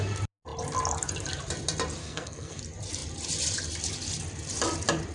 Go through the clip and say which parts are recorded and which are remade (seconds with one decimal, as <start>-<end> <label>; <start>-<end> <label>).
0.0-2.0 recorded; 2.0-2.6 remade; 2.6-5.1 recorded